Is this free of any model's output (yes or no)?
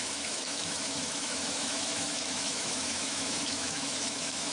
no